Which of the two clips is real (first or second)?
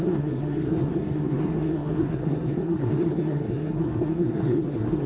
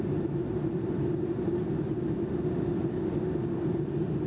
second